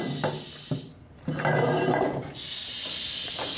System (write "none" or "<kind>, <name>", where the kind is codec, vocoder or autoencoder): none